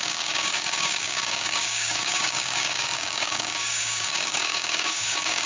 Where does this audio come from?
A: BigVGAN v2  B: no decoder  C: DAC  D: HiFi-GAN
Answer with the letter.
C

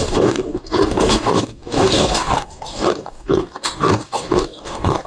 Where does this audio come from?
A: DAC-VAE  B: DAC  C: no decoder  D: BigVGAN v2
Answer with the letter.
B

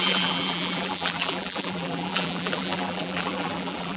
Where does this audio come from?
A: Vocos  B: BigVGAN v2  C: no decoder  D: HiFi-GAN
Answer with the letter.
B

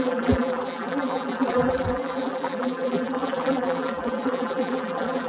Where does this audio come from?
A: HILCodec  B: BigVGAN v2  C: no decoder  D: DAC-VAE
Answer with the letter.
B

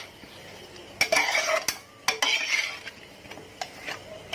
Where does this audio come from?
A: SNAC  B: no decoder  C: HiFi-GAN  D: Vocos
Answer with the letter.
B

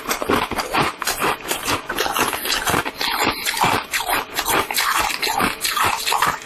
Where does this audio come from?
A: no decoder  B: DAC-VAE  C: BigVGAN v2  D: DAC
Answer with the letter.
A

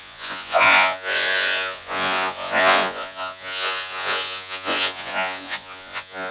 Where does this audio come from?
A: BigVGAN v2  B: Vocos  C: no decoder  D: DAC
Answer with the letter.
B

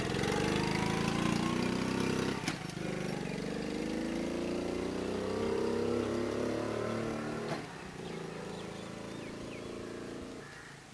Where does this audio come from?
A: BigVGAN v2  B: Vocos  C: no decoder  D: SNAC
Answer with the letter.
C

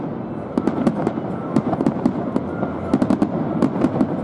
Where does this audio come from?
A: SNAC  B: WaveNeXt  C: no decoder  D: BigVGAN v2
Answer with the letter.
C